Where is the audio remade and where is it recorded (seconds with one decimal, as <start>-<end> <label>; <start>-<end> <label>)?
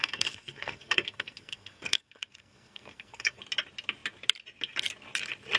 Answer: 0.0-3.4 remade; 3.4-5.6 recorded